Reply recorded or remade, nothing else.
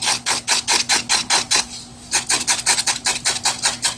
recorded